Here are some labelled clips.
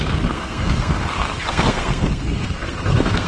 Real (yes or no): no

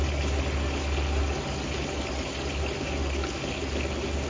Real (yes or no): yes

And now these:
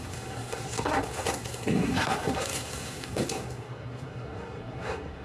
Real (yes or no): no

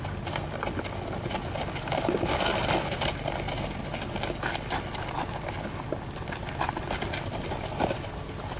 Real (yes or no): yes